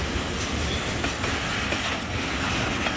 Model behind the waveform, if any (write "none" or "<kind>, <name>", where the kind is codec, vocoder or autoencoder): none